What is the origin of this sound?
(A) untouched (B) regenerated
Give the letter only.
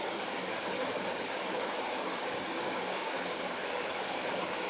B